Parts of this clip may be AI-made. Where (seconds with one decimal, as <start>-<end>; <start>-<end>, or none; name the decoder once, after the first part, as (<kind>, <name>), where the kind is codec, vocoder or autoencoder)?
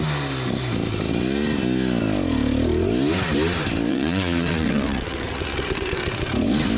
3.9-6.3 (vocoder, WaveNeXt)